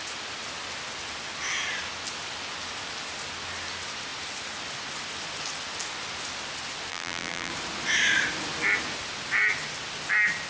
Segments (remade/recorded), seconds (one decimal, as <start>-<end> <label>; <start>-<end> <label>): 0.0-6.9 recorded; 6.9-7.5 remade; 7.5-10.5 recorded